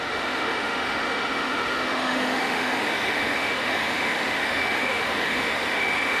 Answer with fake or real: fake